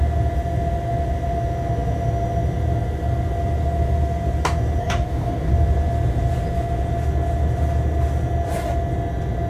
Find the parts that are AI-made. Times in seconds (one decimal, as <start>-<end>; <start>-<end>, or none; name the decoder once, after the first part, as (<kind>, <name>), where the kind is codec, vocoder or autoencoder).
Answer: 4.8-5.5 (codec, DAC)